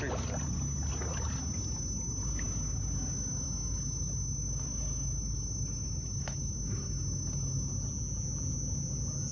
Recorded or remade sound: recorded